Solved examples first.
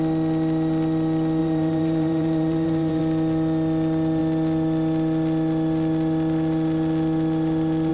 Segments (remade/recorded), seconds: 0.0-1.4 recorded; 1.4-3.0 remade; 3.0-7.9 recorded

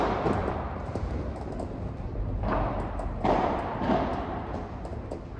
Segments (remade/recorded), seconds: 0.0-0.4 recorded; 0.4-3.6 remade; 3.6-5.4 recorded

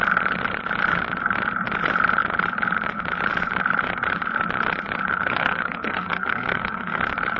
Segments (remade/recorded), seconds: 0.0-5.1 recorded; 5.1-7.0 remade; 7.0-7.4 recorded

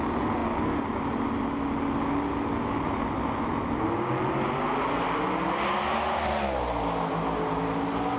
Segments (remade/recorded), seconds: 0.0-8.2 recorded

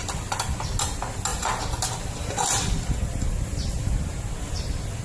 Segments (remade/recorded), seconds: 0.0-5.0 recorded

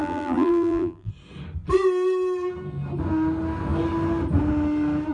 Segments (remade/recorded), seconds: 0.0-1.1 remade; 1.1-5.1 recorded

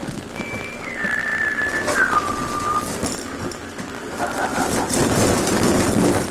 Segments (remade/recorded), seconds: 0.0-6.3 recorded